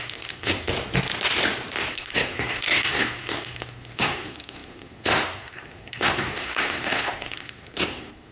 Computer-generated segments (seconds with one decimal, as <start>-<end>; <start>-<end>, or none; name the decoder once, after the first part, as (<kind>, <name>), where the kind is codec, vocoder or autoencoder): 0.0-0.7 (codec, SNAC); 1.9-8.3